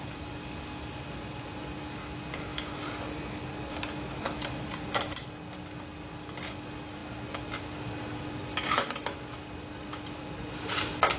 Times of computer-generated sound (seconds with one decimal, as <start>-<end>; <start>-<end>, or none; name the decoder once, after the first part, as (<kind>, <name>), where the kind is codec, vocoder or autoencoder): none